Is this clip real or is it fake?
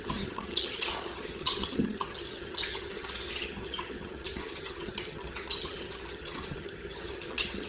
fake